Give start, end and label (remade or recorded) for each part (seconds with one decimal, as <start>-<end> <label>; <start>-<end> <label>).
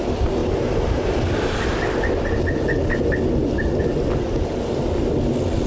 0.0-5.7 recorded